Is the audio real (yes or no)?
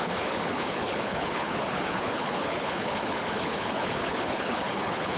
no